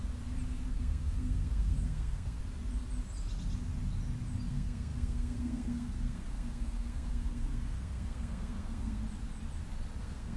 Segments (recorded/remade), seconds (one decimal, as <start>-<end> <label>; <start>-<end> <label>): 0.0-0.7 recorded; 0.7-2.4 remade; 2.4-4.5 recorded; 4.5-9.0 remade; 9.0-10.0 recorded; 10.0-10.4 remade